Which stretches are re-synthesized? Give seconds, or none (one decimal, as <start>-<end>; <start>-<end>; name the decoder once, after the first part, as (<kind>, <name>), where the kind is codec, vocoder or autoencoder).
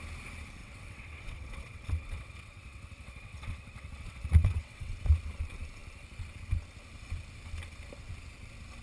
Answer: 0.6-4.9 (vocoder, WaveNeXt)